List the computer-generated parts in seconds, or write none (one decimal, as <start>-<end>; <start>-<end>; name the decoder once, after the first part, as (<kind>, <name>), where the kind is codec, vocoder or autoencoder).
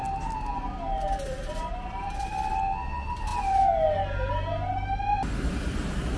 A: none